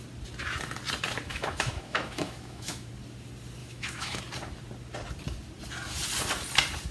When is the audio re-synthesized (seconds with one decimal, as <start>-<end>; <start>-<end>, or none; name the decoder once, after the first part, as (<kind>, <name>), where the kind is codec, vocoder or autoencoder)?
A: 1.3-2.9 (autoencoder, DAC-VAE); 3.6-4.2